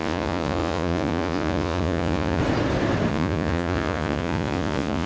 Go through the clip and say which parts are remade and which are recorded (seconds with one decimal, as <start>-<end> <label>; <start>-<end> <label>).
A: 0.0-2.4 remade; 2.4-3.1 recorded; 3.1-5.1 remade